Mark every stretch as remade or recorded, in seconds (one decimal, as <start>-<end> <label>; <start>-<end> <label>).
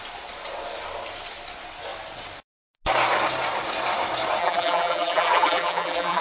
0.0-4.4 recorded; 4.4-6.2 remade